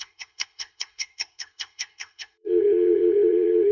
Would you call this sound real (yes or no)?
no